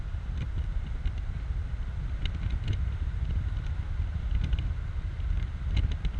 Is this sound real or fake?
real